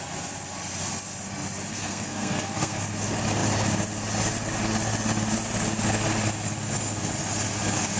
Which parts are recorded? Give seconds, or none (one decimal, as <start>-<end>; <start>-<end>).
0.0-1.7; 2.8-8.0